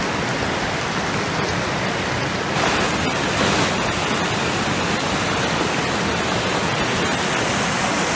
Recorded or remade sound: recorded